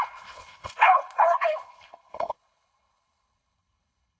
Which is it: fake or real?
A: fake